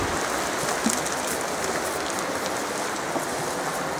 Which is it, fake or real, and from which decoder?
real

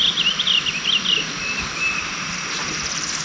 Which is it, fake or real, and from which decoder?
real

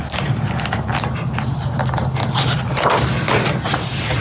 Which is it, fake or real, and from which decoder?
real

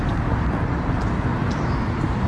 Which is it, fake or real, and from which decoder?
real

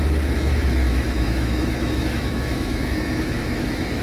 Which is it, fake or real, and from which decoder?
fake, autoencoder, DAC-VAE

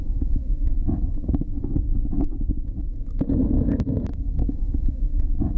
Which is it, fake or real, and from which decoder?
fake, autoencoder, DAC-VAE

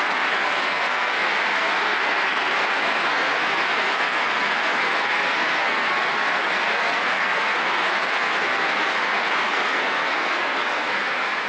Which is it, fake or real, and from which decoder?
fake, codec, SNAC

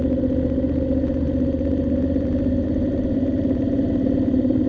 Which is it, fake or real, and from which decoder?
real